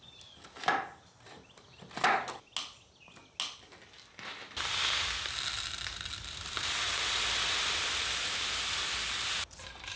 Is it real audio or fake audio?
real